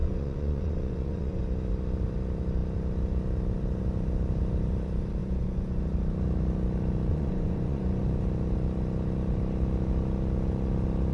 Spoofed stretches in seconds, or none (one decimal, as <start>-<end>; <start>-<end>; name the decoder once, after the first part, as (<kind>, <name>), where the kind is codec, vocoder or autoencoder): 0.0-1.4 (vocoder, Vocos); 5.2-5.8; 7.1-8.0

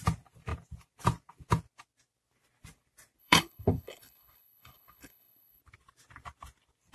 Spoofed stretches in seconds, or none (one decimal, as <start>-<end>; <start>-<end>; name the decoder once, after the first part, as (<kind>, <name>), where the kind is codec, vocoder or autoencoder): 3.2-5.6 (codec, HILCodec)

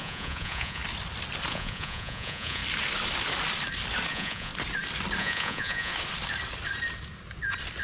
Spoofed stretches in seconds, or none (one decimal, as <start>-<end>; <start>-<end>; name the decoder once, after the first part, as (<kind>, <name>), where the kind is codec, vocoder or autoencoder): 0.0-0.8 (vocoder, Vocos); 1.5-2.6; 4.1-4.5; 5.2-5.9

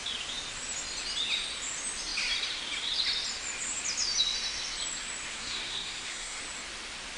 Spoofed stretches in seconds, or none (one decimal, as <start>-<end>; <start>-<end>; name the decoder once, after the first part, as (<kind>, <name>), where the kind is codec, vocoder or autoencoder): 5.3-6.4 (codec, SNAC)

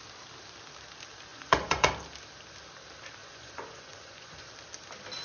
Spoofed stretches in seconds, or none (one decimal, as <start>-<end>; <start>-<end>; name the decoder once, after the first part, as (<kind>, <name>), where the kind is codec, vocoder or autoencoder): 1.3-1.9 (vocoder, Vocos); 3.2-4.5

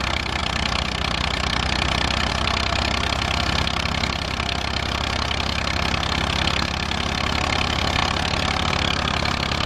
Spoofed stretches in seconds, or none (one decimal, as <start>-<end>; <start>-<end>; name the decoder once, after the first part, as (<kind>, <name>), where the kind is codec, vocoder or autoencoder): none